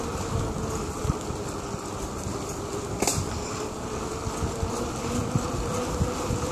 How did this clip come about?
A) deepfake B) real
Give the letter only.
B